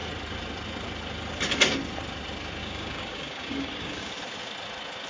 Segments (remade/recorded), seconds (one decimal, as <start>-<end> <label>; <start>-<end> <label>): 0.0-2.6 recorded; 2.6-4.1 remade; 4.1-5.1 recorded